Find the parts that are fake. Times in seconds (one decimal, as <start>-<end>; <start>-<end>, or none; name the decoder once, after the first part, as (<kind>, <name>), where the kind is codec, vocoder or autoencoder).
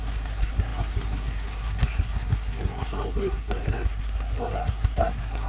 0.0-5.5 (codec, SNAC)